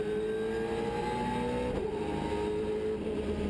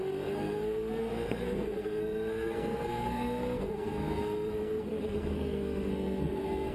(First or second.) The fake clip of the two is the second